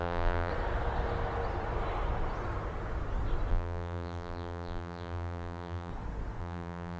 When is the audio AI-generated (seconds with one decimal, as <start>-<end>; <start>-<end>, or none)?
0.0-0.5; 3.5-5.9; 6.4-7.0